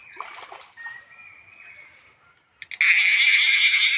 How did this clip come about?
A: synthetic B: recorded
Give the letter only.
B